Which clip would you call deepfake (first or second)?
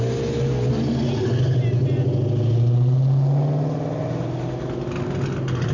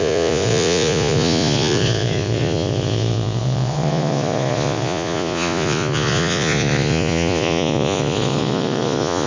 second